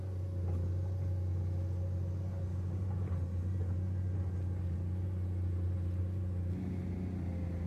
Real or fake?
real